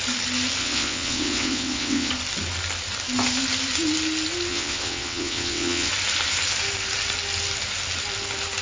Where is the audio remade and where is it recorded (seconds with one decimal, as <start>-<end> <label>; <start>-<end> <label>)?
0.0-0.6 recorded; 0.6-2.1 remade; 2.1-4.5 recorded; 4.5-5.9 remade; 5.9-8.6 recorded